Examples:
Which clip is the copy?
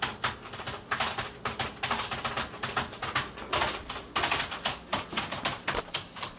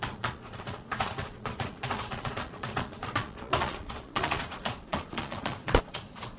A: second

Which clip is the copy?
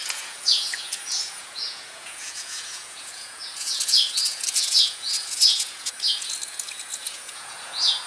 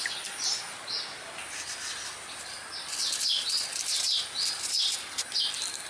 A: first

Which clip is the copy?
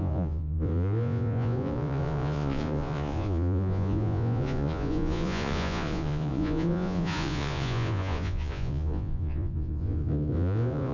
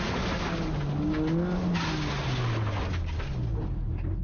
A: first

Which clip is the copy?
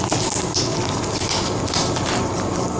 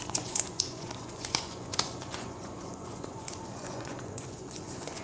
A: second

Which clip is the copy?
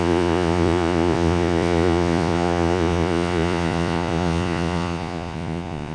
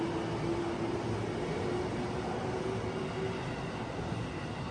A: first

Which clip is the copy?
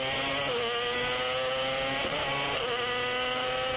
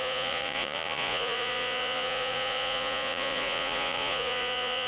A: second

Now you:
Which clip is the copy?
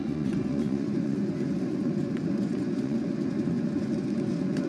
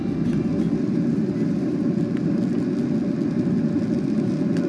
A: first